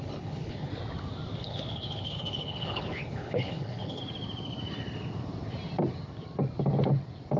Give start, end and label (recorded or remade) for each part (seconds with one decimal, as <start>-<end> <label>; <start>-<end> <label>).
0.0-0.7 remade; 0.7-1.4 recorded; 1.4-4.0 remade; 4.0-7.4 recorded